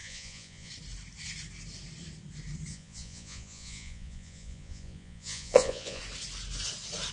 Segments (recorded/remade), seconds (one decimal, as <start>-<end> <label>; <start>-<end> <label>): 0.0-0.7 remade; 0.7-2.7 recorded; 2.7-6.0 remade; 6.0-7.1 recorded

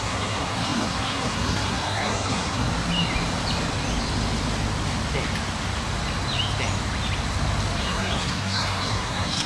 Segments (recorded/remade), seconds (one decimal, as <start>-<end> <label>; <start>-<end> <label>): 0.0-2.7 remade; 2.7-7.8 recorded; 7.8-9.5 remade

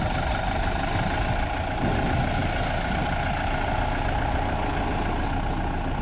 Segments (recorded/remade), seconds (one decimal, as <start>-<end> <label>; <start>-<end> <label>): 0.0-6.0 recorded

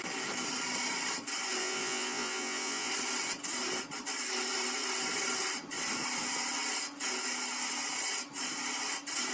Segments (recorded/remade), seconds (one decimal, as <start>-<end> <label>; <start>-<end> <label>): 0.0-1.6 recorded; 1.6-2.9 remade; 2.9-9.3 recorded

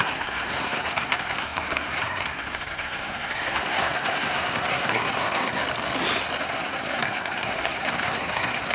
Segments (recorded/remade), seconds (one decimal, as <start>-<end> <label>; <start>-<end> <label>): 0.0-5.6 remade; 5.6-6.4 recorded; 6.4-8.7 remade

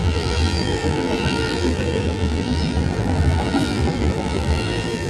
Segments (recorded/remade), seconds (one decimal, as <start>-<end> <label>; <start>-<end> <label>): 0.0-5.1 remade

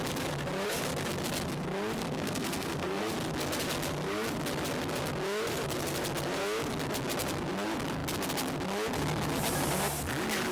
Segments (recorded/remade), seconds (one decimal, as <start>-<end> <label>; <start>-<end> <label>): 0.0-2.0 recorded; 2.0-3.1 remade; 3.1-10.5 recorded

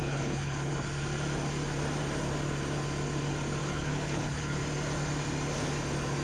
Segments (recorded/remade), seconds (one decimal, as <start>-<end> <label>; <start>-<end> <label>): 0.0-0.7 remade; 0.7-3.6 recorded; 3.6-4.6 remade; 4.6-6.2 recorded